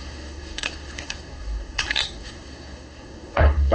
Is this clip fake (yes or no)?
yes